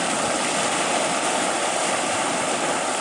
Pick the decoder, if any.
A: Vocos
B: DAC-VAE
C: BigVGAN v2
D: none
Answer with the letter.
C